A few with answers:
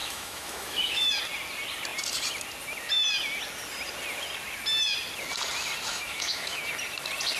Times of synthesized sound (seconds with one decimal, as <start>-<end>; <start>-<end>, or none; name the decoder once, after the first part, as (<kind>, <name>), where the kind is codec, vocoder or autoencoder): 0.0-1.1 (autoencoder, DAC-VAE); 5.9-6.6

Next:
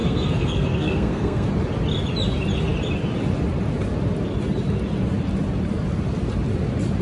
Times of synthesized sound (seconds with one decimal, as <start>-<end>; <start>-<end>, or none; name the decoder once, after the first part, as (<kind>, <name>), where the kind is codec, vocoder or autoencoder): 0.0-1.5 (codec, SNAC)

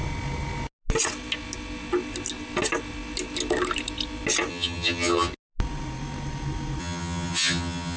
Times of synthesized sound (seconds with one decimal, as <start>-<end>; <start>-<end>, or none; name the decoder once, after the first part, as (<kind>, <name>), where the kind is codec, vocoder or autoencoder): 4.5-5.3 (vocoder, HiFi-GAN); 6.8-8.0

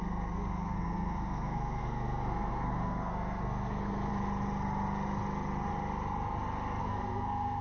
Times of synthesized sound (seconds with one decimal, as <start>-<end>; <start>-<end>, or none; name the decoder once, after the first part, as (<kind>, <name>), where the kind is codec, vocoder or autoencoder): 0.0-4.1 (codec, SNAC); 6.8-7.6